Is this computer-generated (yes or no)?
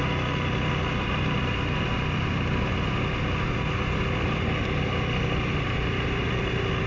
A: no